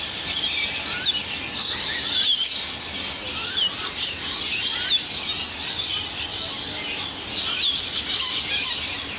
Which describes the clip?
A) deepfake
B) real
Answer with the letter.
B